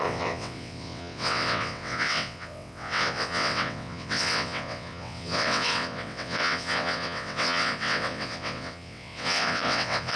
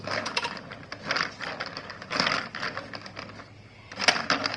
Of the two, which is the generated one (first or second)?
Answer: first